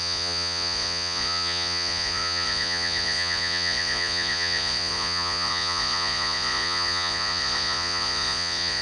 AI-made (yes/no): yes